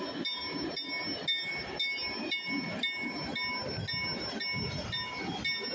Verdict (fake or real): real